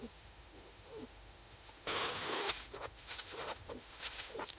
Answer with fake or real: fake